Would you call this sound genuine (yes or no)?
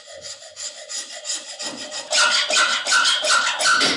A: yes